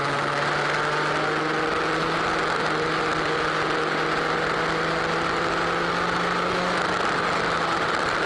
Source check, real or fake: real